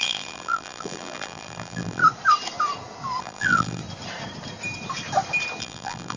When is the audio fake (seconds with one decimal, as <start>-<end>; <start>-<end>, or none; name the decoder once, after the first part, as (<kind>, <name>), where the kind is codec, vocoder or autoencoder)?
0.0-2.0 (vocoder, BigVGAN v2); 3.2-3.8; 5.6-6.2